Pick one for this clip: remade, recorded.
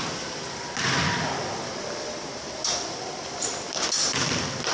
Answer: recorded